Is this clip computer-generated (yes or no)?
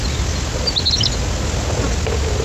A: no